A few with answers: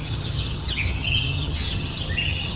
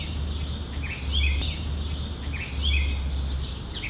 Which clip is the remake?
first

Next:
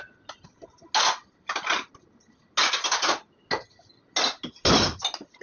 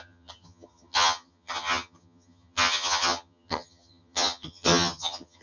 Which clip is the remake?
second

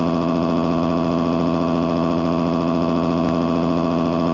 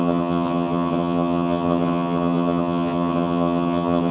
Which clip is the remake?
second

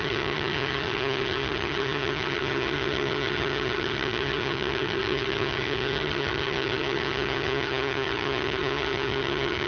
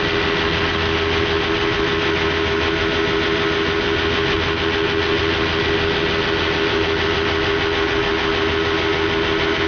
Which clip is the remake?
first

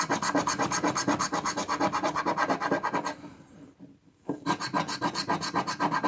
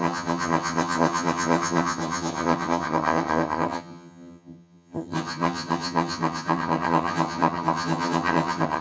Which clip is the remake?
second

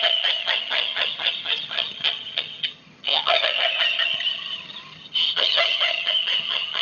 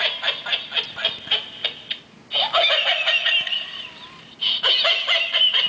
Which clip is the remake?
first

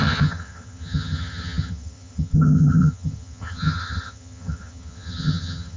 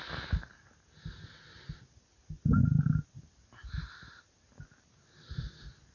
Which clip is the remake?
first